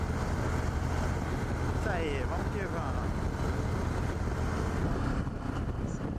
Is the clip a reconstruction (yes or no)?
no